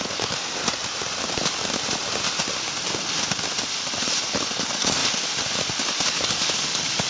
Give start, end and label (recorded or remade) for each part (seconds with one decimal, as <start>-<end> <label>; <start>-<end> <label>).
0.0-0.6 remade; 0.6-4.5 recorded; 4.5-5.0 remade; 5.0-6.1 recorded; 6.1-7.1 remade